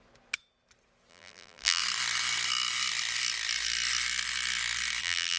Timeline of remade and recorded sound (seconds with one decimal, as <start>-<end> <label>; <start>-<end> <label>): 0.0-1.1 recorded; 1.1-1.8 remade; 1.8-5.0 recorded; 5.0-5.4 remade